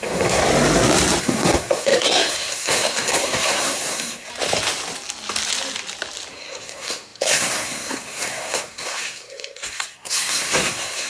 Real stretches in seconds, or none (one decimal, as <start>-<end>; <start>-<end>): 0.4-1.2; 4.3-6.3